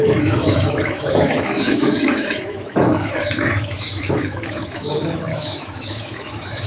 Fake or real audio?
fake